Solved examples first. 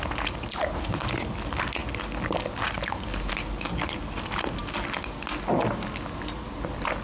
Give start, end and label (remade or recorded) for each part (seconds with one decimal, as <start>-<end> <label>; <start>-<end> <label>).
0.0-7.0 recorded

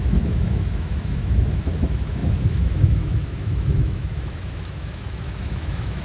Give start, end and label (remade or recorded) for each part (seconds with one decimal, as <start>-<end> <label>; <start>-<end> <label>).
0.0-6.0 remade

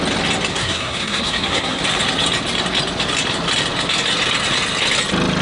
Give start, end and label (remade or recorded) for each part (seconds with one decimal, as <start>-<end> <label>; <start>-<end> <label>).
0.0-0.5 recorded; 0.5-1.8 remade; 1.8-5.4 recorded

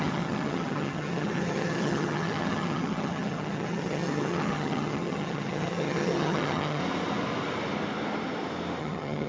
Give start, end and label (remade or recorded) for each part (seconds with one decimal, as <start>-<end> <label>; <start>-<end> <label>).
0.0-6.8 remade; 6.8-8.8 recorded; 8.8-9.3 remade

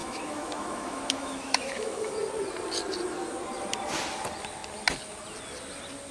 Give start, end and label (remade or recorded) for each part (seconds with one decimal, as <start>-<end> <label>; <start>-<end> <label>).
0.0-2.1 remade; 2.1-6.1 recorded